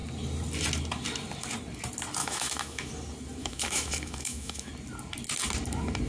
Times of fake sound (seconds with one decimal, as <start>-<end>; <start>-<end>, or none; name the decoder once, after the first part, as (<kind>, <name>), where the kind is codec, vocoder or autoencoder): 2.2-2.9 (autoencoder, DAC-VAE); 3.4-4.7

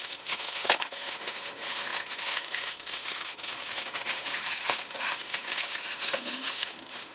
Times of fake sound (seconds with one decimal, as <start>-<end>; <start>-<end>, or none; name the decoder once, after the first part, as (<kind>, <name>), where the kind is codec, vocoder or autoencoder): 0.0-7.1 (autoencoder, DAC-VAE)